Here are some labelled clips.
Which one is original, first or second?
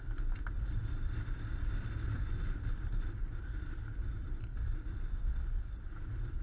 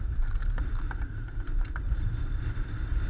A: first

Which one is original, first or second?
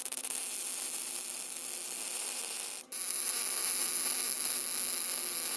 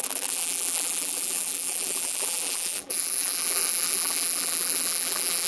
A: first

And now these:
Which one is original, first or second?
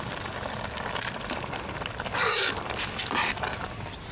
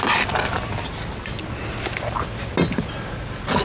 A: second